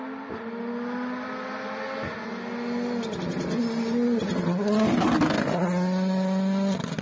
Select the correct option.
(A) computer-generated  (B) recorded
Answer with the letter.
B